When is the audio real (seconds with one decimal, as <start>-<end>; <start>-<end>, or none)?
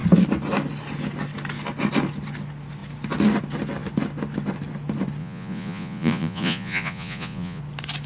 0.0-5.2; 7.6-8.1